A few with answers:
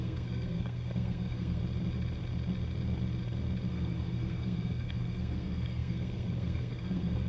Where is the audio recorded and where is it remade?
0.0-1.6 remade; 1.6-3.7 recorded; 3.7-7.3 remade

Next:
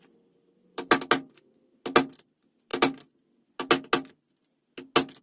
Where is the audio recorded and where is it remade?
0.0-5.2 recorded